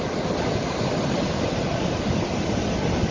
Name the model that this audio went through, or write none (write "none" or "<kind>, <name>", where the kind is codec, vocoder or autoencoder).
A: none